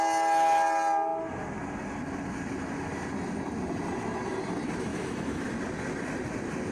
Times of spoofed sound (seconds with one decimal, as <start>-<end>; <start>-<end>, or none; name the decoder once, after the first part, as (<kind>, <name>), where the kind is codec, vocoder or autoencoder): 4.9-5.5 (autoencoder, DAC-VAE)